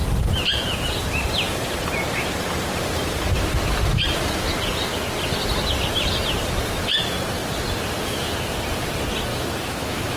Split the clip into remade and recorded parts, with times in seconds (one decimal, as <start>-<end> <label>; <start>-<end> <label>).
0.0-9.3 recorded; 9.3-10.2 remade